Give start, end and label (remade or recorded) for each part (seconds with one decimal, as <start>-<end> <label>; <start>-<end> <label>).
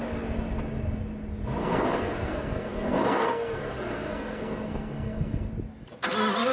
0.0-1.6 recorded; 1.6-5.5 remade; 5.5-6.5 recorded